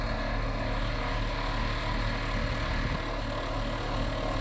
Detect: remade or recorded recorded